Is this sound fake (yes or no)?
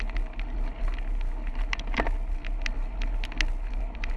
no